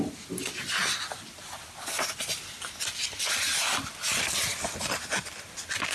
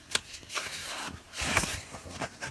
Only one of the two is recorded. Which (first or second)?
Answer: first